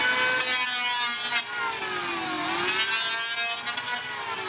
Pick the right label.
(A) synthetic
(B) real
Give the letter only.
B